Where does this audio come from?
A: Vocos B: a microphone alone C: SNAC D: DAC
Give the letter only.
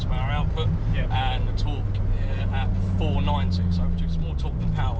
B